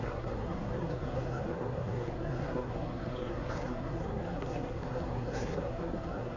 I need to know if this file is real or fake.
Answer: fake